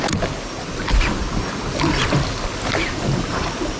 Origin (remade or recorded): recorded